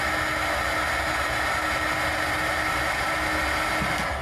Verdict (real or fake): real